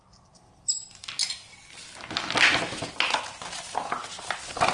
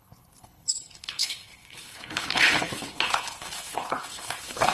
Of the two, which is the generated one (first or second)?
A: second